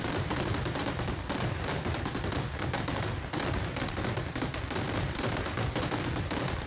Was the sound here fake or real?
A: fake